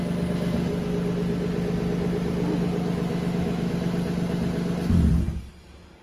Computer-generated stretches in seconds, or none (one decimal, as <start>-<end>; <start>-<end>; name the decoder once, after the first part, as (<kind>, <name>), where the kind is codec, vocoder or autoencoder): 3.1-3.7 (autoencoder, DAC-VAE)